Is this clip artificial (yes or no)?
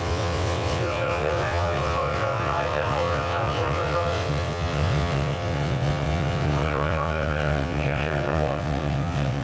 yes